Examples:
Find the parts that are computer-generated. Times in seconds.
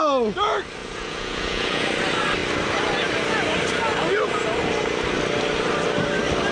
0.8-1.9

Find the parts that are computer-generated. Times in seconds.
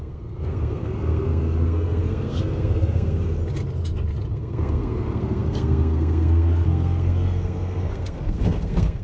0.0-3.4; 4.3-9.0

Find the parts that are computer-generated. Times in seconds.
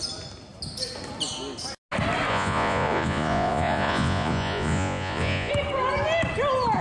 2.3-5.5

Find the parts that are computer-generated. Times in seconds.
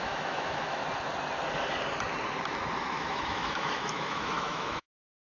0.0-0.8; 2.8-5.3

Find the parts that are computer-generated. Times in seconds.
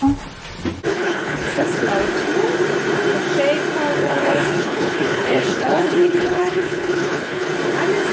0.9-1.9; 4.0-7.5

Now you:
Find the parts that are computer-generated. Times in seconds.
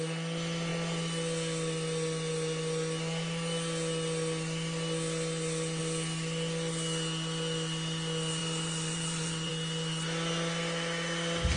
8.4-9.5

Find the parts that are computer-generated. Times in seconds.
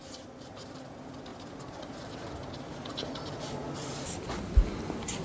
none